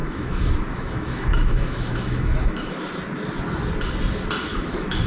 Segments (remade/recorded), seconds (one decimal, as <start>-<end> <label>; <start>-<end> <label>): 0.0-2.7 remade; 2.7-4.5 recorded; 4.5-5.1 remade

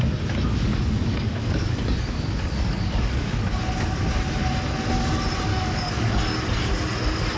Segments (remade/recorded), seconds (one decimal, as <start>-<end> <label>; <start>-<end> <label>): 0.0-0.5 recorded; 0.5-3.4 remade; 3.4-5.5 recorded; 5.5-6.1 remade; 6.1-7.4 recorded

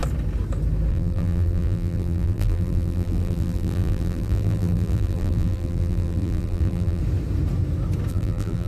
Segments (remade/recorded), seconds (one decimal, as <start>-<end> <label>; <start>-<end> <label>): 0.0-0.9 recorded; 0.9-7.0 remade; 7.0-8.1 recorded; 8.1-8.7 remade

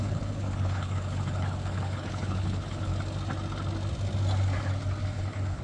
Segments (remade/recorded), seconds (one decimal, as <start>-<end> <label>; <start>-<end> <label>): 0.0-2.9 remade; 2.9-5.1 recorded; 5.1-5.6 remade

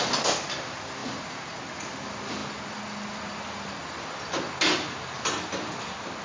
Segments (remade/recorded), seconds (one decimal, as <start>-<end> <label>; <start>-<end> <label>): 0.0-6.2 recorded

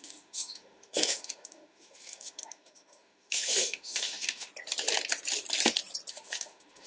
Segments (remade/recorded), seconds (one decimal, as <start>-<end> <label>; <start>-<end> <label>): 0.0-4.5 remade; 4.5-6.1 recorded; 6.1-6.9 remade

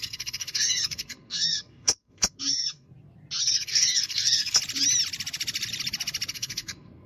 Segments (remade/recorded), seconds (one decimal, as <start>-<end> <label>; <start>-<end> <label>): 0.0-2.9 remade; 2.9-3.4 recorded; 3.4-4.6 remade; 4.6-6.3 recorded; 6.3-7.1 remade

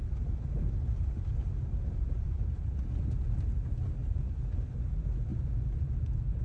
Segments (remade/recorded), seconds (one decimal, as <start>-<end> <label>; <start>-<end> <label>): 0.0-1.4 recorded; 1.4-2.9 remade; 2.9-4.0 recorded; 4.0-4.7 remade; 4.7-6.4 recorded